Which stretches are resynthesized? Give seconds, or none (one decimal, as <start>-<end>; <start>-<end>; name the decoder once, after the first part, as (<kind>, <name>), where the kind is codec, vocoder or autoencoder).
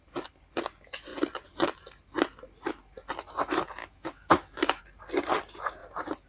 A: 3.8-4.8 (autoencoder, DAC-VAE)